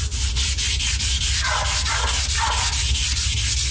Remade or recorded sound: recorded